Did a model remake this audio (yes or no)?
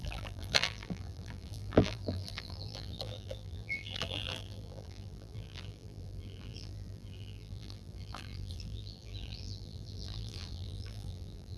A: yes